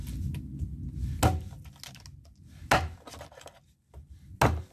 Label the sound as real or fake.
real